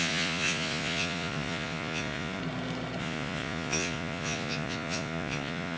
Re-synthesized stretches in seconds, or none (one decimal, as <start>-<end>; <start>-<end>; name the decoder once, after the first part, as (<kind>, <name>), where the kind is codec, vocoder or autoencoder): 0.0-2.4 (vocoder, Vocos); 3.0-5.8